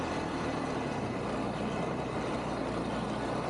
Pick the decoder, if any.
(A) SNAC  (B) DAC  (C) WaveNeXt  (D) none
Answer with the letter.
D